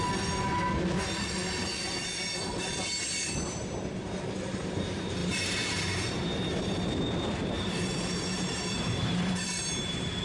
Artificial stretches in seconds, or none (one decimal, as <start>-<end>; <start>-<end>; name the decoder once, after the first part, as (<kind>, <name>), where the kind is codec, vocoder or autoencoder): 5.2-10.2 (vocoder, BigVGAN v2)

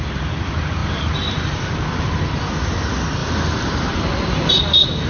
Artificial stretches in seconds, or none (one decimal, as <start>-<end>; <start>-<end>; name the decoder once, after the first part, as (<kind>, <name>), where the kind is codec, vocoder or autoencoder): 0.8-2.5 (vocoder, BigVGAN v2); 3.2-4.5

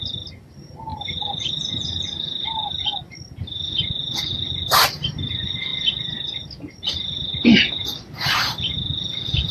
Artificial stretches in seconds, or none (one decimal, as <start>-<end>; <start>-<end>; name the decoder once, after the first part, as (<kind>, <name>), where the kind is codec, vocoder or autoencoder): 0.9-2.8 (vocoder, BigVGAN v2)